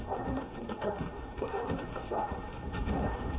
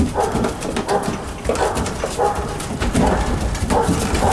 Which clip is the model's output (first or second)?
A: first